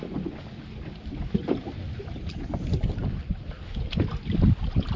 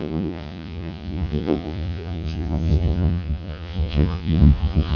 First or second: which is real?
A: first